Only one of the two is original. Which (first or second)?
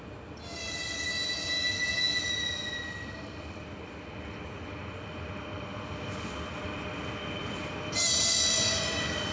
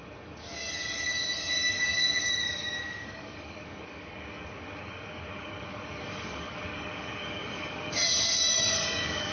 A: first